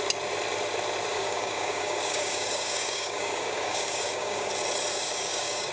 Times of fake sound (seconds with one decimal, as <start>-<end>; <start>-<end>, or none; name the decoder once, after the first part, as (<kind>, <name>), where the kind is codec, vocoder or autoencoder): 1.1-4.5 (codec, DAC); 4.9-5.7